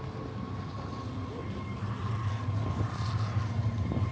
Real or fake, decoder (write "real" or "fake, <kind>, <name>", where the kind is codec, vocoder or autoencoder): real